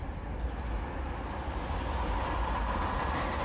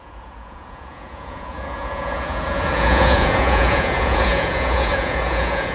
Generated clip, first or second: second